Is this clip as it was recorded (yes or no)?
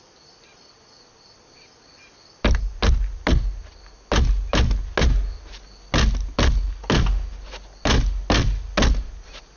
yes